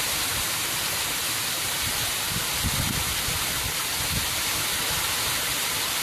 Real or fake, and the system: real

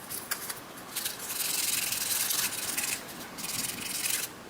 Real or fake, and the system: real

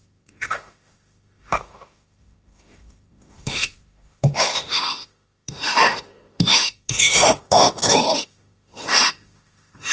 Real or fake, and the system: fake, autoencoder, DAC-VAE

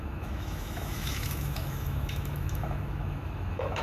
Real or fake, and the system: fake, autoencoder, DAC-VAE